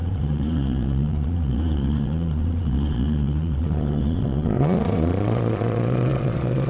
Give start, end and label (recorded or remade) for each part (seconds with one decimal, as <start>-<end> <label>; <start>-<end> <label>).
0.0-6.7 remade